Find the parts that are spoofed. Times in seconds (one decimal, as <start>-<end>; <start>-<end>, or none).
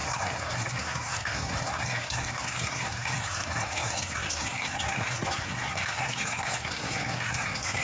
0.0-7.8